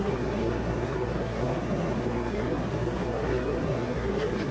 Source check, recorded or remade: remade